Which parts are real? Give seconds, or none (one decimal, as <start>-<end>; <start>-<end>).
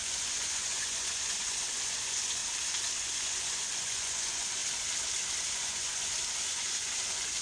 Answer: 2.4-3.0; 4.6-5.4